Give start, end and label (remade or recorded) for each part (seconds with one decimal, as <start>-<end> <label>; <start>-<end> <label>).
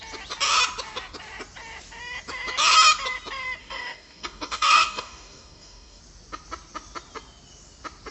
0.0-3.6 recorded; 3.6-6.0 remade; 6.0-8.1 recorded